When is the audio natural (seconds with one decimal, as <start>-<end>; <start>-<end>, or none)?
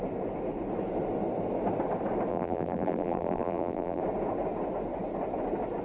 0.0-2.3; 4.0-5.8